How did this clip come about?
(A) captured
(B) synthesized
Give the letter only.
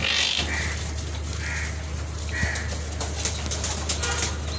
A